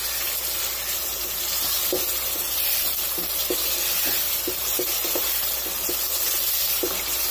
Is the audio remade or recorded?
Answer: recorded